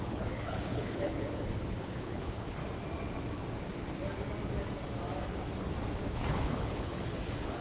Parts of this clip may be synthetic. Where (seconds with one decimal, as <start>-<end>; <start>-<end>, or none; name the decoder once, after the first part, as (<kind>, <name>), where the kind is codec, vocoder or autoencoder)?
0.0-2.6 (codec, HILCodec); 6.1-7.6

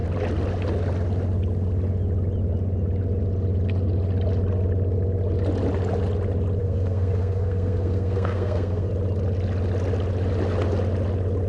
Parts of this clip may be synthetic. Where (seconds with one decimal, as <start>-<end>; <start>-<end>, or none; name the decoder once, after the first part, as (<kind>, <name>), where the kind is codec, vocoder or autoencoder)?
6.6-8.9 (codec, SNAC)

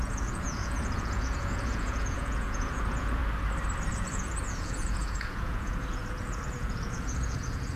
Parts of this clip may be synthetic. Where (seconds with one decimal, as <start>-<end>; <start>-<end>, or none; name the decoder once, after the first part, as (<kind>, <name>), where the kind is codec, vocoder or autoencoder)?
0.0-3.2 (vocoder, Vocos); 3.9-7.8

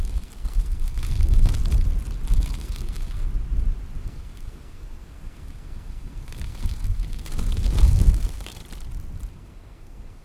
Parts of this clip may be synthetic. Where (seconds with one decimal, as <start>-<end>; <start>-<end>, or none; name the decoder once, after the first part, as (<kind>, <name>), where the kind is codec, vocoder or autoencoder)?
0.0-1.6 (codec, SNAC); 2.3-3.3; 4.0-8.6; 9.3-10.2